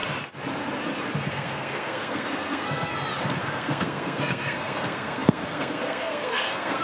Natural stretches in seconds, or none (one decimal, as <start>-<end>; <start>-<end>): 0.0-1.3; 2.9-3.4